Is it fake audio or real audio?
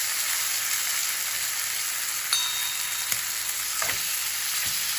real